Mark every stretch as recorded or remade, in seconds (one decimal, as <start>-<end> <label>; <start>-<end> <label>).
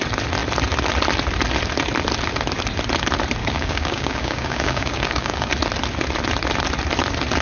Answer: 0.0-3.4 recorded; 3.4-5.5 remade; 5.5-7.4 recorded